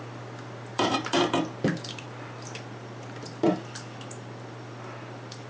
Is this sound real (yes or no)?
no